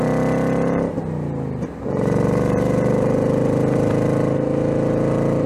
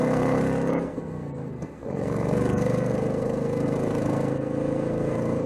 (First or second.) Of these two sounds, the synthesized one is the second